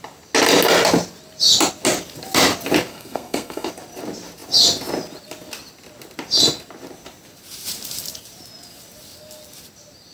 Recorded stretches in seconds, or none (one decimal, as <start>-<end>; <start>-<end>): 0.0-2.9; 3.7-10.1